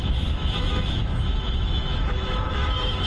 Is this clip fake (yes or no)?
yes